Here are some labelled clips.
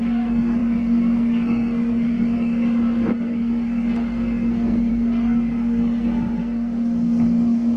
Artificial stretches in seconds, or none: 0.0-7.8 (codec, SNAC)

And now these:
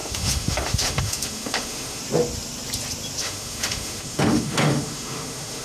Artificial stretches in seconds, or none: 0.0-2.0 (autoencoder, DAC-VAE); 3.2-5.6

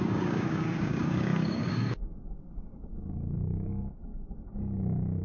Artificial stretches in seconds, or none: 0.0-4.1 (codec, DAC)

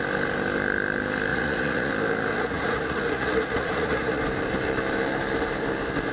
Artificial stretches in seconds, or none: 1.3-1.9 (vocoder, Vocos); 2.3-4.2

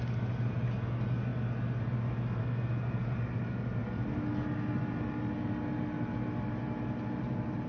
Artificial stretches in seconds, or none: 0.0-3.8 (vocoder, BigVGAN v2); 4.8-7.7

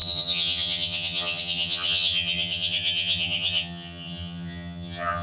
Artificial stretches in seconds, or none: 0.0-5.2 (vocoder, HiFi-GAN)

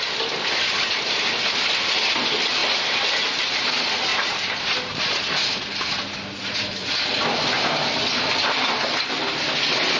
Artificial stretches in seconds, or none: 2.6-3.6 (vocoder, BigVGAN v2); 4.1-9.1